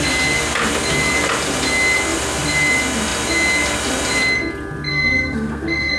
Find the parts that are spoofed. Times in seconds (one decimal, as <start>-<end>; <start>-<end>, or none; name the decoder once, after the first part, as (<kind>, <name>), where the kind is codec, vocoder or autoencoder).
4.9-6.0 (codec, SNAC)